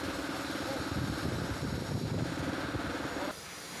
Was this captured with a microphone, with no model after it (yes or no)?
yes